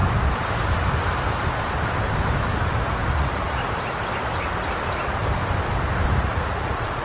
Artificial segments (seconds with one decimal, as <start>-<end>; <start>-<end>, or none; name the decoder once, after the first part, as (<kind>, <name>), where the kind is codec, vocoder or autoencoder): 3.1-3.6 (vocoder, Vocos); 6.2-7.0